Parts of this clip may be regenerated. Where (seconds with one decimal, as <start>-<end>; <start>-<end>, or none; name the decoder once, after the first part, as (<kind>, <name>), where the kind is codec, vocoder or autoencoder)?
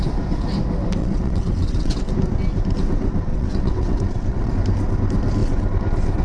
1.0-2.1 (vocoder, WaveNeXt); 3.3-4.5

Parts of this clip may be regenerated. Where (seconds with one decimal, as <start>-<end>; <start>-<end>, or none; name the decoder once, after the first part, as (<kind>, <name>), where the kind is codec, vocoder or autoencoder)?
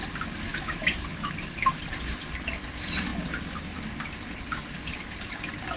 0.5-1.7 (autoencoder, DAC-VAE)